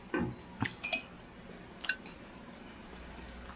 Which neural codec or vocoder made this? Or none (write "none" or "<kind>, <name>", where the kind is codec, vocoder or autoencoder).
none